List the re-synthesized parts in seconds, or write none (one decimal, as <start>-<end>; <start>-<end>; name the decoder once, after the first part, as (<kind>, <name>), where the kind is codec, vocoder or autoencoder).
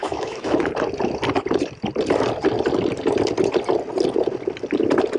0.0-0.6 (autoencoder, DAC-VAE)